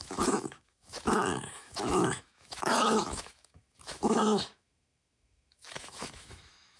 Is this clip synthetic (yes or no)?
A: yes